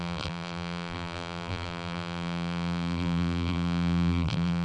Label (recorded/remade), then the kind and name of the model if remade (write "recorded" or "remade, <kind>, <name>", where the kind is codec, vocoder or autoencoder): remade, vocoder, BigVGAN v2